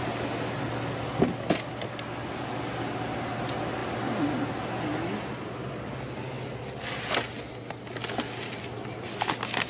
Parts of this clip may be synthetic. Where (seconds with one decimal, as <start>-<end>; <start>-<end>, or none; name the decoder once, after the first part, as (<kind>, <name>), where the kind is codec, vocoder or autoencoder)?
none